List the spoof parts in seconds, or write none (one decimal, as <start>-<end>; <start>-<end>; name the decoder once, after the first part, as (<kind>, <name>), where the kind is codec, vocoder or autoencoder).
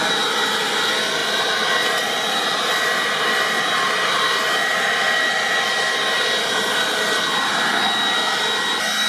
none